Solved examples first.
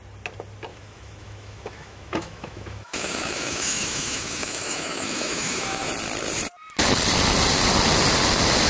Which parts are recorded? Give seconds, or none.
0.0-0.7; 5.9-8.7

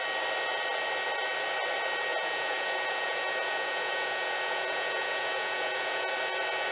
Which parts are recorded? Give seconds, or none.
0.0-2.1; 6.1-6.7

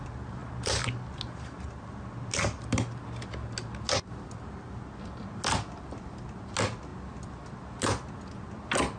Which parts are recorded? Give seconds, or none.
0.0-9.0